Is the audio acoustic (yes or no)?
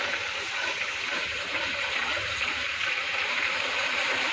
no